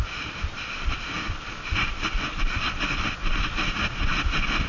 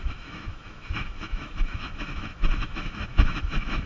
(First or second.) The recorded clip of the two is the first